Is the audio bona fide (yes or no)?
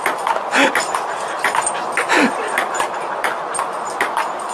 yes